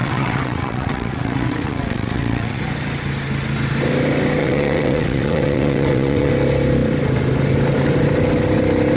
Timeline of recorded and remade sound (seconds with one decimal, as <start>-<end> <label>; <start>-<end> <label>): 0.0-2.6 remade; 2.6-4.4 recorded; 4.4-6.3 remade; 6.3-9.0 recorded